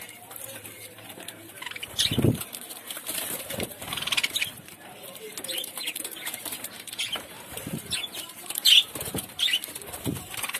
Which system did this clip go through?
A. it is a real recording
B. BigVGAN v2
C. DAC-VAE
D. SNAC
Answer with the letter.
B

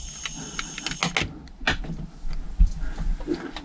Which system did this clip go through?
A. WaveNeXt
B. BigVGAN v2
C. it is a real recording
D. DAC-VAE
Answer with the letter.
C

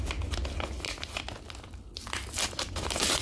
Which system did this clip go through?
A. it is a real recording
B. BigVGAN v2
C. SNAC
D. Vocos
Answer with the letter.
A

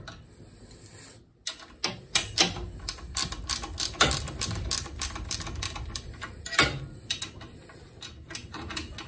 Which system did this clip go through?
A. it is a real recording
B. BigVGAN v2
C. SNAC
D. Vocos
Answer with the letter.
A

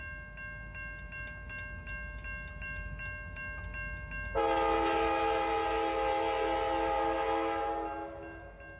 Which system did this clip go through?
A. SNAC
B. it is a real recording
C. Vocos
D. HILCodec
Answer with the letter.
B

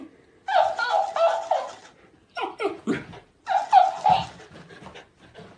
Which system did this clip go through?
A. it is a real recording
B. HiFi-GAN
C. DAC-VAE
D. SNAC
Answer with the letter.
A